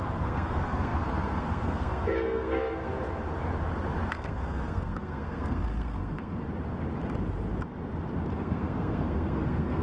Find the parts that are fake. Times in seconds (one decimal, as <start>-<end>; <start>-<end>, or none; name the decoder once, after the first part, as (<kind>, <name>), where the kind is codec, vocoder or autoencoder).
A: 0.0-2.9 (codec, SNAC); 4.1-6.4; 8.3-9.8